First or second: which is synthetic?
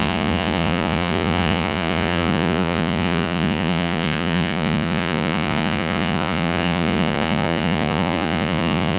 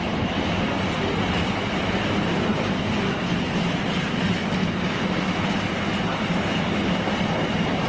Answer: first